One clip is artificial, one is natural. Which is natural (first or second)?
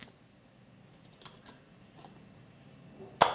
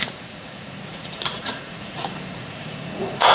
first